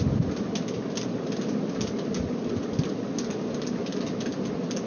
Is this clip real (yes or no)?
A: yes